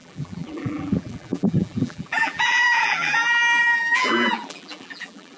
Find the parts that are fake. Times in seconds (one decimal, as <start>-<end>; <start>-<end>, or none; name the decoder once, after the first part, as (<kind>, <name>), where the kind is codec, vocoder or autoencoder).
0.0-5.4 (vocoder, BigVGAN v2)